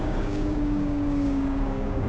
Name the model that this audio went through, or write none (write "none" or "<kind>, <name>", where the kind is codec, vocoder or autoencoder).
codec, DAC